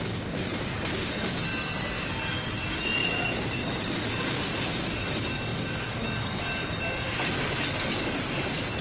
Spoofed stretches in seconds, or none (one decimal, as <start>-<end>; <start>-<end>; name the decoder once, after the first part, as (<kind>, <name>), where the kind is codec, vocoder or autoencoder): 3.0-4.4 (vocoder, BigVGAN v2)